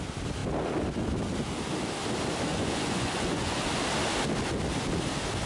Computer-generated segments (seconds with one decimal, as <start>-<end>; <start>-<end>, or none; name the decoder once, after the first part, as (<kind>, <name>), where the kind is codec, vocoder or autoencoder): 2.5-3.6 (vocoder, Vocos)